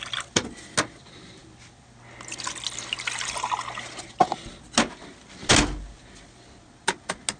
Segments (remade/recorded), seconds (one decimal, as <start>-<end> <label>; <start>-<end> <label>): 0.0-7.4 recorded